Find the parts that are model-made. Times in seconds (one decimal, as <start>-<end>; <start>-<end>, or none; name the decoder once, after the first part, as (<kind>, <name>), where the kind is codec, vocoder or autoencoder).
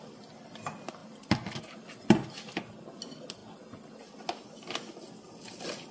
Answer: 1.0-1.6 (vocoder, BigVGAN v2)